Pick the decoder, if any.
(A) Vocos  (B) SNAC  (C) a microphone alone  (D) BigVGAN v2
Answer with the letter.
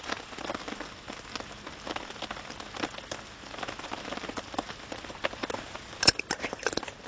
C